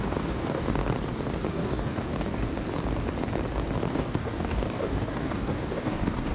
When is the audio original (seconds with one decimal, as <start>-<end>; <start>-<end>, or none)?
0.8-1.5; 2.5-3.9